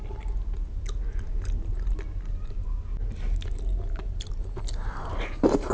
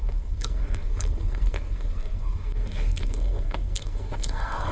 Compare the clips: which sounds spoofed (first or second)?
second